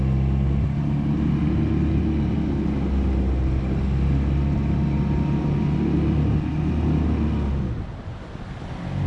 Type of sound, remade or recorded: recorded